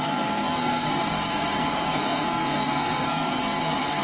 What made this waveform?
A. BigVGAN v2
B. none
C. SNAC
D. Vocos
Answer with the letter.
C